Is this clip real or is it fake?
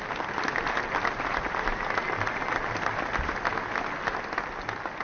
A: real